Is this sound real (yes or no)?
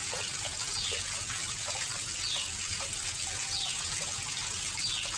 yes